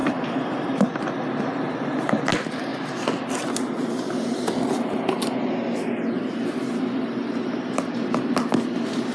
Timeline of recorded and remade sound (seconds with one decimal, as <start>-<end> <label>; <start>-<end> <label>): 0.0-9.1 recorded